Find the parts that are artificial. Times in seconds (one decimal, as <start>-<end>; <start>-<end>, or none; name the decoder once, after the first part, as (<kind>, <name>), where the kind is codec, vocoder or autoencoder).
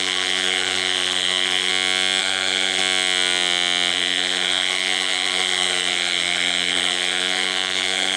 0.0-1.7 (codec, SNAC); 2.2-2.8; 3.9-8.2